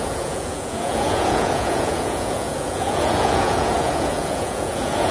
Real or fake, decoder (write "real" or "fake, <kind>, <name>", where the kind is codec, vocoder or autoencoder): fake, vocoder, Vocos